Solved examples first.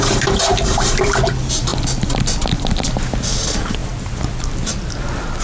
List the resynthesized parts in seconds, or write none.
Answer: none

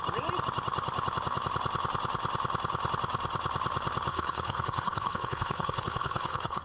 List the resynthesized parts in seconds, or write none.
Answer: 4.1-6.6 (codec, HILCodec)

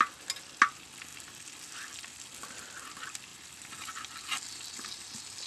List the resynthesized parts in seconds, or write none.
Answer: none

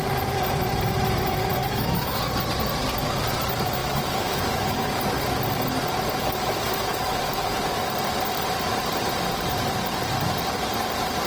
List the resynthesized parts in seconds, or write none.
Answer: 1.6-2.2 (autoencoder, DAC-VAE); 3.8-4.9; 6.2-7.6